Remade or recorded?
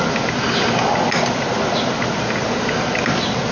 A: recorded